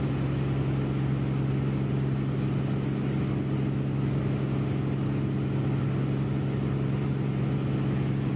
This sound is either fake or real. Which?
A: real